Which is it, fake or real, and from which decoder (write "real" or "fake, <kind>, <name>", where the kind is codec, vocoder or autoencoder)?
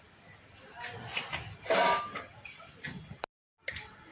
real